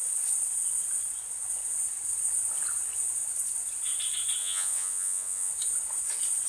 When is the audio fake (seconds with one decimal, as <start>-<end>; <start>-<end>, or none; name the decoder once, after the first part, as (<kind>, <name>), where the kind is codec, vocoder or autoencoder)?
4.4-5.5 (vocoder, Vocos)